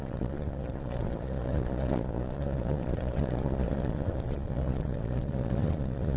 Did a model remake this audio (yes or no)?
yes